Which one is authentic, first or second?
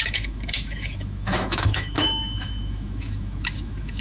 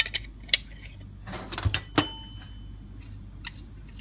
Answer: second